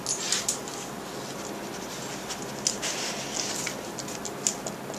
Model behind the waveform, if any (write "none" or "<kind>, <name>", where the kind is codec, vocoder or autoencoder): none